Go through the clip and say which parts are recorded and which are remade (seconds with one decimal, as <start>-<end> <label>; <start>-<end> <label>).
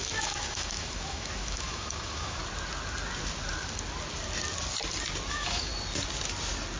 0.0-2.4 remade; 2.4-5.3 recorded; 5.3-5.7 remade; 5.7-6.8 recorded